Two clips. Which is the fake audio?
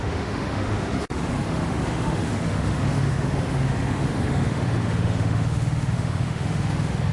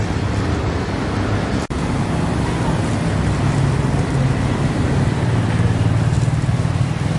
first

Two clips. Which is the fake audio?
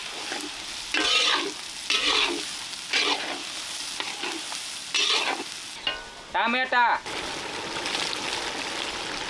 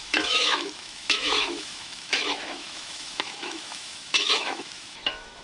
second